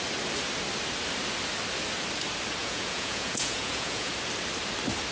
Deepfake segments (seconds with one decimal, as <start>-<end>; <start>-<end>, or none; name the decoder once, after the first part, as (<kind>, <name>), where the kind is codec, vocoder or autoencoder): 2.6-4.1 (vocoder, Vocos)